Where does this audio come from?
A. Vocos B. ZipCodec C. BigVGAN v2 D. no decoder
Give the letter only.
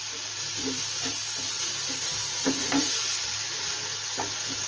D